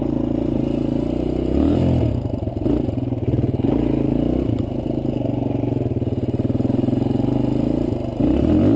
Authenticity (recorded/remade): recorded